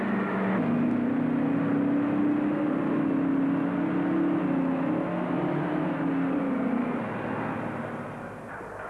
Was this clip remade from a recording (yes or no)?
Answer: no